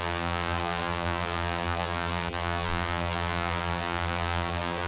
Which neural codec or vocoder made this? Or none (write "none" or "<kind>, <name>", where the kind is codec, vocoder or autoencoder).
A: vocoder, BigVGAN v2